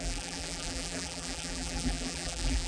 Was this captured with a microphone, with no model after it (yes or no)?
no